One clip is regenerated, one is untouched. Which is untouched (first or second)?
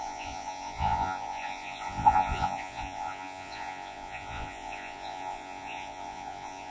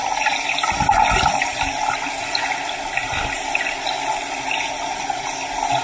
second